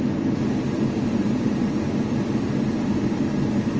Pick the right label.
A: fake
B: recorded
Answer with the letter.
B